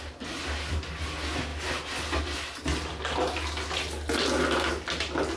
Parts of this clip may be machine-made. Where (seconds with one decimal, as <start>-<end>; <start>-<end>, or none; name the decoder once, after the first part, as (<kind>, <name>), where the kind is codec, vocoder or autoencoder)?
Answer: none